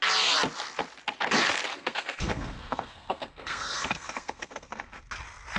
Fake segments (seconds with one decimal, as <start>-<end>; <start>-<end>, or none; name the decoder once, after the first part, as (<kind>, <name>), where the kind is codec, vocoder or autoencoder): 1.7-5.0 (codec, SNAC)